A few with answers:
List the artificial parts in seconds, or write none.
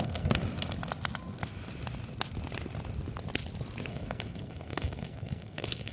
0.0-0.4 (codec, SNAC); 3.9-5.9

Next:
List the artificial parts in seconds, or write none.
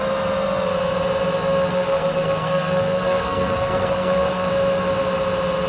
1.7-4.5 (codec, SNAC)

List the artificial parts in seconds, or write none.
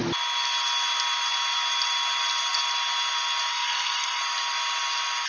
3.5-4.2 (codec, SNAC)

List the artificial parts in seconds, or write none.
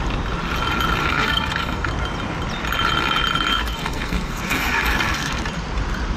1.0-1.9 (codec, SNAC); 3.5-5.4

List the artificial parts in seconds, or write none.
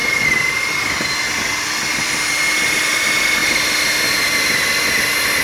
none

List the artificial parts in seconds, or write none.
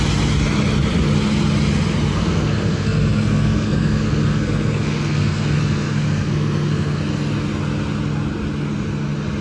2.1-7.0 (codec, SNAC)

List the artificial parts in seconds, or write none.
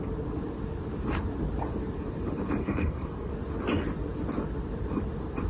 2.6-3.3 (codec, SNAC)